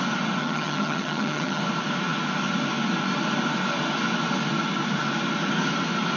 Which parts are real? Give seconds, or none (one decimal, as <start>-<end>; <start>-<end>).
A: 0.0-0.4; 1.6-6.2